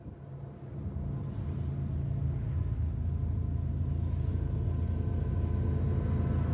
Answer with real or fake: real